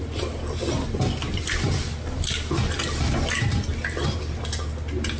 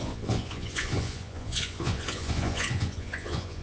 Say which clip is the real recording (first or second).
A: first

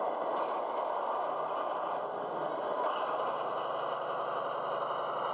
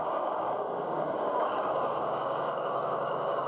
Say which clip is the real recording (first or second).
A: first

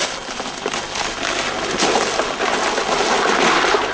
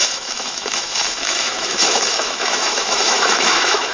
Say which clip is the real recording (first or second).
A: first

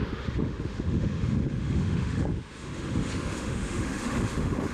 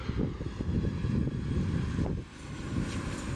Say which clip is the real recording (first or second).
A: second